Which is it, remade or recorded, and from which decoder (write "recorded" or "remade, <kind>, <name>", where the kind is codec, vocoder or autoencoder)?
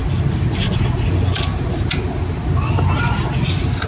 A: recorded